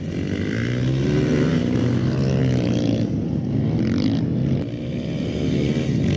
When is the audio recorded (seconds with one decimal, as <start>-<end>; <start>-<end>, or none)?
0.0-6.2

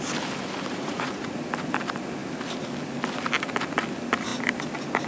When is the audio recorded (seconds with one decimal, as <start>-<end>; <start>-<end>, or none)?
0.0-0.4; 1.3-5.1